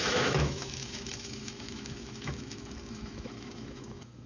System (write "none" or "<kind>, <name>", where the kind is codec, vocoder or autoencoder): autoencoder, DAC-VAE